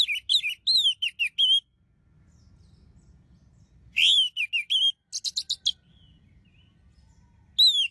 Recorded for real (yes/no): yes